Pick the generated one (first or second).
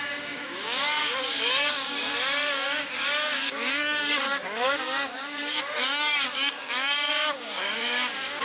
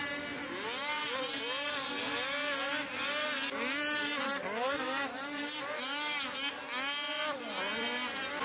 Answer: first